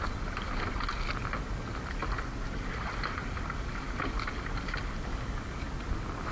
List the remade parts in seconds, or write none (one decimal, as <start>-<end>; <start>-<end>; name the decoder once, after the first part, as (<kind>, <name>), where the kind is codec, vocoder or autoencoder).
5.1-5.7 (codec, DAC)